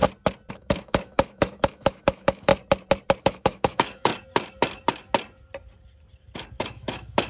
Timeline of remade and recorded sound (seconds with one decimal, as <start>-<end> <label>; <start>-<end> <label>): 0.0-0.5 recorded; 0.5-2.5 remade; 2.5-3.2 recorded; 3.2-4.1 remade; 4.1-6.6 recorded; 6.6-7.3 remade

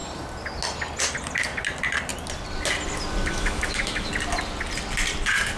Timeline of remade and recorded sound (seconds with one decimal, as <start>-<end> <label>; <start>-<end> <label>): 0.0-3.3 recorded; 3.3-4.1 remade; 4.1-5.6 recorded